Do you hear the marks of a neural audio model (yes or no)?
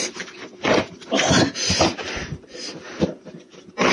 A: yes